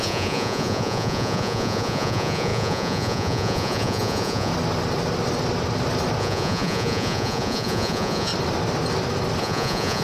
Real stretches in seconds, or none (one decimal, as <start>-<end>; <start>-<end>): 4.5-6.2; 8.3-9.4